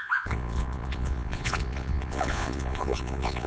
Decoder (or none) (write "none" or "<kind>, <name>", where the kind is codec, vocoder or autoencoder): vocoder, Vocos